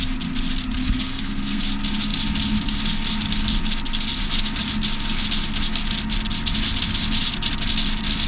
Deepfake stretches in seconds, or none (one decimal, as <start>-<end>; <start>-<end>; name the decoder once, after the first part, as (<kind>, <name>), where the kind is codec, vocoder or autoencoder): 0.8-1.6 (codec, SNAC)